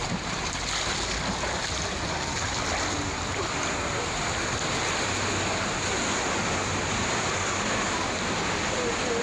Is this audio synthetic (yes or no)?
no